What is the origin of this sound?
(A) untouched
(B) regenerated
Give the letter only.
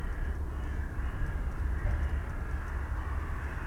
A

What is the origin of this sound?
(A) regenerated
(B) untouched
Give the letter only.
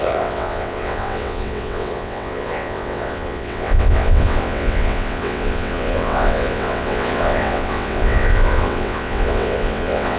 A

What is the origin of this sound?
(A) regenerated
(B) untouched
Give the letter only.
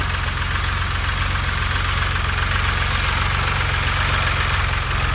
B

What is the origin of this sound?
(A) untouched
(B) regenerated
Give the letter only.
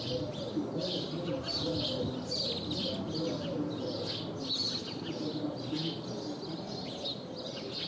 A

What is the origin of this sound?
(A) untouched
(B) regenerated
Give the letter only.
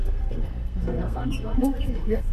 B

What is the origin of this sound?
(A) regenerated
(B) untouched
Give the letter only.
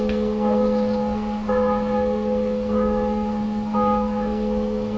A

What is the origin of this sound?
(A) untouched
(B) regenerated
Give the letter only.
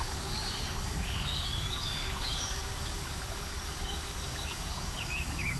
B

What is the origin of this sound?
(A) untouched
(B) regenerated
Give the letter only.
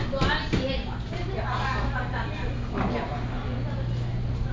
A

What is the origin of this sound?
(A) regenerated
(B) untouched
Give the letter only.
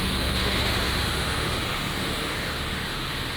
A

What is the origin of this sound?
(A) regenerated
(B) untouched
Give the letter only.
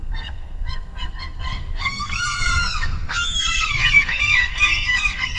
A